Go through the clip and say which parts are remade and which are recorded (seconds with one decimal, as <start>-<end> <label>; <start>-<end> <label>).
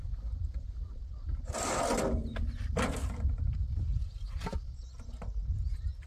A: 0.0-2.2 remade; 2.2-3.7 recorded; 3.7-6.1 remade